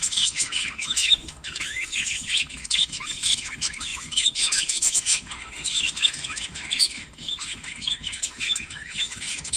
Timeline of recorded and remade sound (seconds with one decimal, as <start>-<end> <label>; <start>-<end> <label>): 0.0-9.6 remade